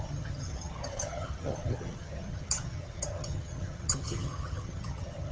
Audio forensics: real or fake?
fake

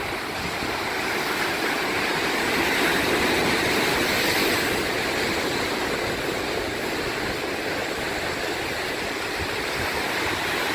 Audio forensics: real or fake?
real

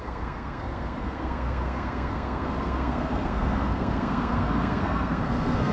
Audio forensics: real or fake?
fake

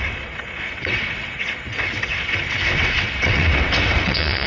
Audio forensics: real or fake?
fake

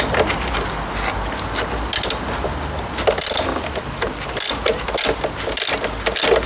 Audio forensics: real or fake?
real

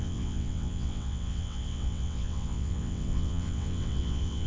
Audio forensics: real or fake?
fake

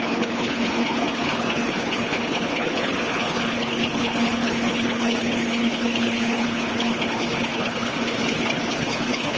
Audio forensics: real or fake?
fake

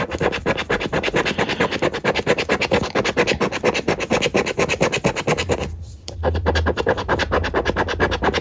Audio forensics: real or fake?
fake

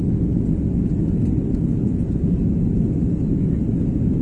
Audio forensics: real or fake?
real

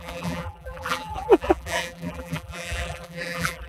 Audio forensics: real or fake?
fake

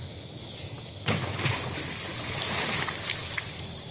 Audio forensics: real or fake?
real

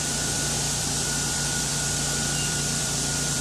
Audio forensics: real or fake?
fake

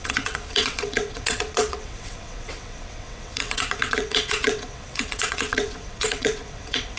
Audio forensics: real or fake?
fake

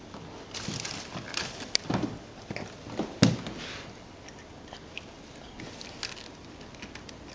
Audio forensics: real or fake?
real